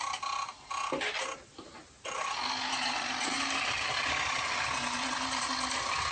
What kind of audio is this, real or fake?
real